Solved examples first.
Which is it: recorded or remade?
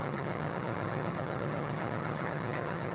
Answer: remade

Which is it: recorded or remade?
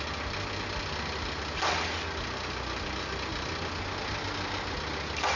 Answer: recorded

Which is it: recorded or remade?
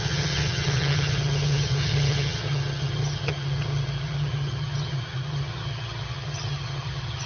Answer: remade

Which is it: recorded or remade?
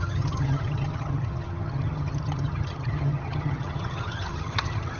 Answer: remade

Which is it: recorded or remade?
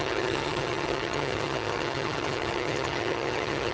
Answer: remade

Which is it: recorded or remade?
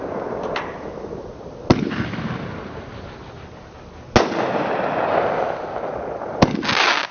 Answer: recorded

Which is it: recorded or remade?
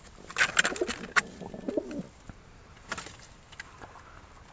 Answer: recorded